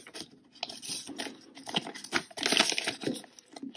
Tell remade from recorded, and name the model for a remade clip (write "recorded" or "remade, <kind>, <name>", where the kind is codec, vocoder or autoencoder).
recorded